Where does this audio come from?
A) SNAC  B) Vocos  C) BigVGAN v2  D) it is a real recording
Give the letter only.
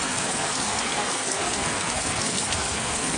A